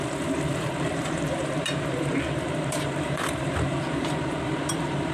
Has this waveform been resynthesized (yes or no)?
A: yes